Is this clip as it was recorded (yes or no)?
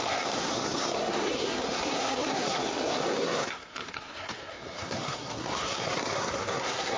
no